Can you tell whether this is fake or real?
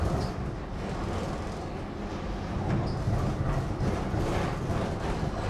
real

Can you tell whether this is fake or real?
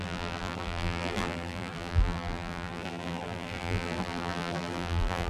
fake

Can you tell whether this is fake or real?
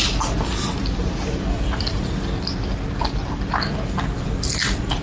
real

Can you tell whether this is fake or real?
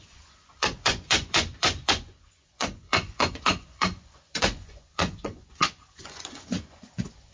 fake